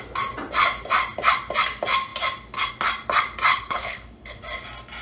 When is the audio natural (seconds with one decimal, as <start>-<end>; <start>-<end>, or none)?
0.0-3.5; 4.4-5.0